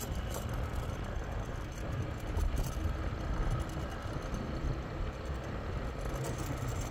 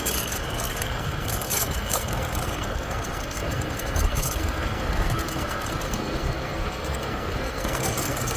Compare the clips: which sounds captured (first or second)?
first